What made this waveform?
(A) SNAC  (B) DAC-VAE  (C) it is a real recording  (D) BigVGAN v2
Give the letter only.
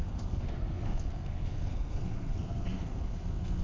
A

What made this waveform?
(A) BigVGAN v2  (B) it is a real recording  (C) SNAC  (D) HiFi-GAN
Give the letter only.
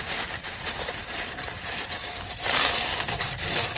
A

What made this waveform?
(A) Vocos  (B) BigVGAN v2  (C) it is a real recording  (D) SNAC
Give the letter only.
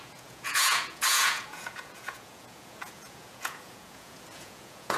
A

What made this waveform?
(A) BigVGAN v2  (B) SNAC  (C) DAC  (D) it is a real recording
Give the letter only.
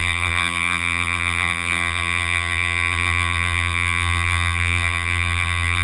A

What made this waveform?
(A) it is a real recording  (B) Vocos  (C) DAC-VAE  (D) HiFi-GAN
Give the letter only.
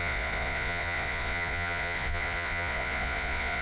B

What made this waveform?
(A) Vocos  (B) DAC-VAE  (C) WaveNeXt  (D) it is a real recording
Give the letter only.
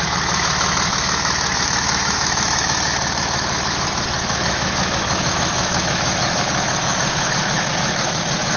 B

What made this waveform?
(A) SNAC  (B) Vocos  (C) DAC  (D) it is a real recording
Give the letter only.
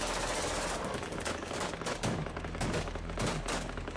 C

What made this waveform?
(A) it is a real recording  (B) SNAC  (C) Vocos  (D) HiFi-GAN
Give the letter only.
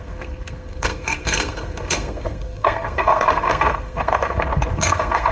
B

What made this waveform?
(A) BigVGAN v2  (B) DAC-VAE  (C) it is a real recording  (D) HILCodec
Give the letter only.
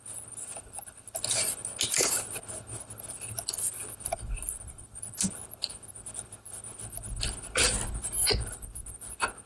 C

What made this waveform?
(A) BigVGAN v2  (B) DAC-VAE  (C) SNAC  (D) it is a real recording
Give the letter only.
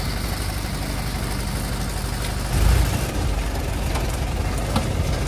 D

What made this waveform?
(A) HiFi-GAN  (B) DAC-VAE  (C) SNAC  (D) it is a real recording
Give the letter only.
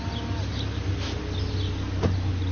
D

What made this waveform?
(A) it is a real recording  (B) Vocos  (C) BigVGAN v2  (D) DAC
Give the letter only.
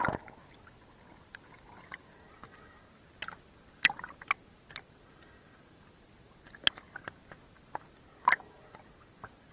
A